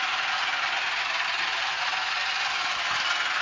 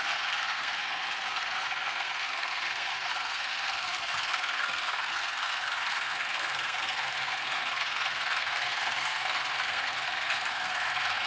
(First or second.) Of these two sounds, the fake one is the second